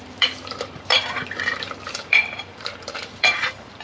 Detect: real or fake fake